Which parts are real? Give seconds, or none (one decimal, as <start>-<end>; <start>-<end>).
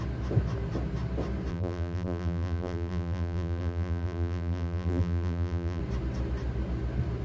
0.0-1.5; 5.8-7.2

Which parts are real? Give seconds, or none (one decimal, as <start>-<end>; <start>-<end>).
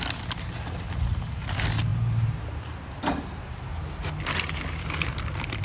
0.0-1.9; 3.8-5.6